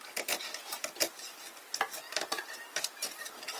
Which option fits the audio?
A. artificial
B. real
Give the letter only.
B